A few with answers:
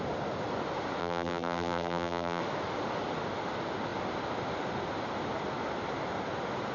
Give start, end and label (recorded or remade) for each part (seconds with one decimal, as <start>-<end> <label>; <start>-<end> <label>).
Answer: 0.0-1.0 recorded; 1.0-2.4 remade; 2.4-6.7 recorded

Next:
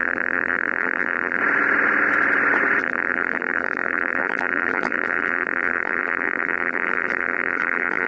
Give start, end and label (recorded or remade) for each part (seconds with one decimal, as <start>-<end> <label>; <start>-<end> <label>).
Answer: 0.0-1.4 remade; 1.4-2.8 recorded; 2.8-8.1 remade

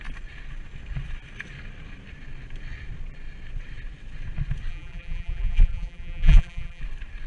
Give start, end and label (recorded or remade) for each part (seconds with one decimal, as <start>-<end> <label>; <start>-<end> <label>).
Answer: 0.0-4.7 recorded; 4.7-6.8 remade; 6.8-7.3 recorded